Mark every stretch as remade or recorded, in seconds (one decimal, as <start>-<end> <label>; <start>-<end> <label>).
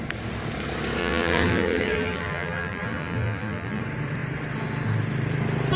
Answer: 0.0-1.0 recorded; 1.0-3.8 remade; 3.8-5.8 recorded